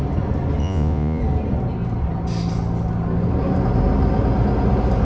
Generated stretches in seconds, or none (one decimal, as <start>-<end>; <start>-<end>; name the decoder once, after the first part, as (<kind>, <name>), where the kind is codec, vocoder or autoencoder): 0.6-1.2 (vocoder, Vocos)